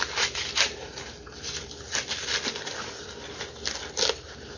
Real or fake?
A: real